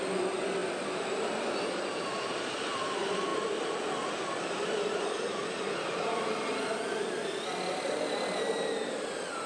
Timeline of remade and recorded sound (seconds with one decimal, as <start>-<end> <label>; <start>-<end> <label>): 0.0-9.5 recorded